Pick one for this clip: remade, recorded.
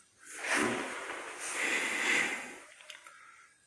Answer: recorded